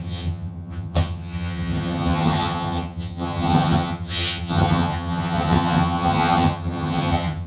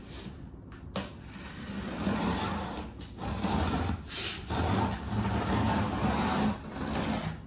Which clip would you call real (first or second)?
second